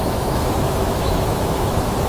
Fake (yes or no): yes